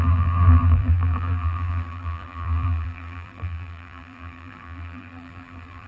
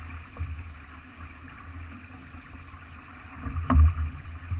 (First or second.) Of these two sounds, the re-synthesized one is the first